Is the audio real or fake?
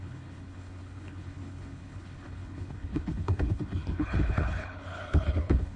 fake